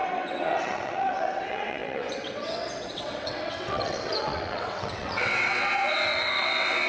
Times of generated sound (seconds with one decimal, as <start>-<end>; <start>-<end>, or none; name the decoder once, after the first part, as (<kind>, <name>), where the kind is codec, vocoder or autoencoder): 0.0-6.9 (vocoder, WaveNeXt)